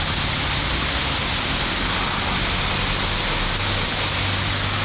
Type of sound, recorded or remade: recorded